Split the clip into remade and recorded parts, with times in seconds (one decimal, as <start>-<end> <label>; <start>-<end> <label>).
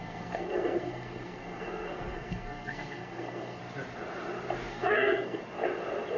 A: 0.0-3.6 remade; 3.6-4.7 recorded; 4.7-5.4 remade; 5.4-6.2 recorded